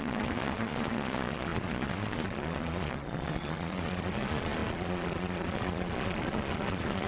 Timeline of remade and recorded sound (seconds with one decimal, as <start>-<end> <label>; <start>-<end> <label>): 0.0-7.1 remade